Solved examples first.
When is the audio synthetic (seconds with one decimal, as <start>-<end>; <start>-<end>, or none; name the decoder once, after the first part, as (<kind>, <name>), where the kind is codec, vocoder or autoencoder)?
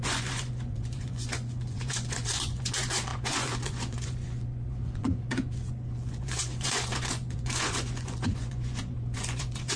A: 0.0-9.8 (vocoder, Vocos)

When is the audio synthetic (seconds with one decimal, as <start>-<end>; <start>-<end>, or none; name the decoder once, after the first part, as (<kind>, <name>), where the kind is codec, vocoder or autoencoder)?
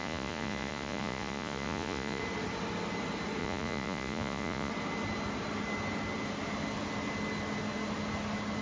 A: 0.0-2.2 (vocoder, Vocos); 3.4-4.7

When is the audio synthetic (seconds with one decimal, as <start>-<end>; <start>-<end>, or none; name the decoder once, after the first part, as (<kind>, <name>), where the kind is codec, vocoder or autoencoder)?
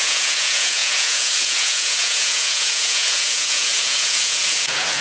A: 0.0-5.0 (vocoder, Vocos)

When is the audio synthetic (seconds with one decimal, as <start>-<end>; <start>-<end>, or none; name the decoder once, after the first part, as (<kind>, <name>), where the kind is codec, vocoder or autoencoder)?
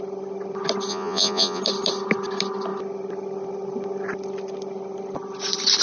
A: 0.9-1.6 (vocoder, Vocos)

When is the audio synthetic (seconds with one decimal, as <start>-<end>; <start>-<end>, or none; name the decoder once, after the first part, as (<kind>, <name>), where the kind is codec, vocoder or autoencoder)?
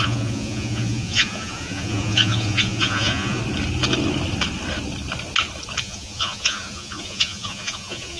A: 0.0-3.4 (vocoder, Vocos); 5.8-8.2